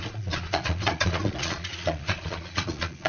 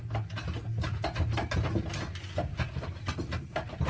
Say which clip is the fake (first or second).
first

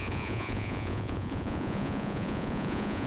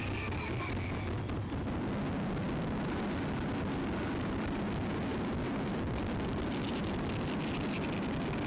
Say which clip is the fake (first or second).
first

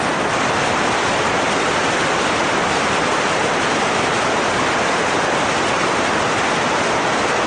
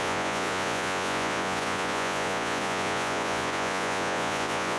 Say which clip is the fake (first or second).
second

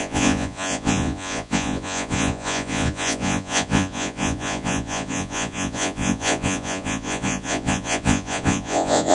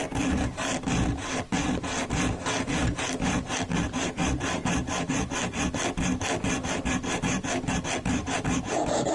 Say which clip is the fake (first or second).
first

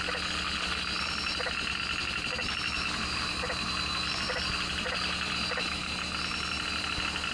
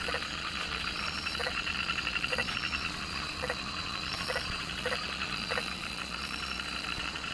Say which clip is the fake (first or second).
second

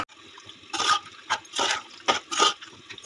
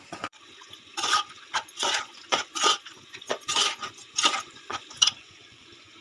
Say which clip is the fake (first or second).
second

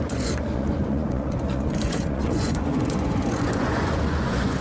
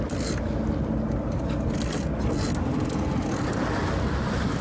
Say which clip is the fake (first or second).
first